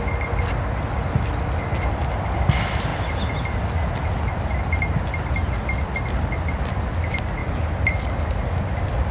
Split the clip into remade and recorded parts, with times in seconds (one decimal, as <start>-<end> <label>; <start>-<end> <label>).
0.0-9.1 recorded